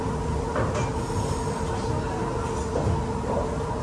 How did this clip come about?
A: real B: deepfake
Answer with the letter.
A